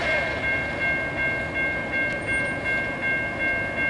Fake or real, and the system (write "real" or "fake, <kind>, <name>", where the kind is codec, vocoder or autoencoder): real